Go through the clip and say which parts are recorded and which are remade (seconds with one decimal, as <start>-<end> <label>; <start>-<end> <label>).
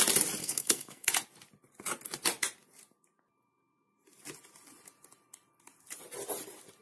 0.0-0.4 recorded; 0.4-1.1 remade; 1.1-6.8 recorded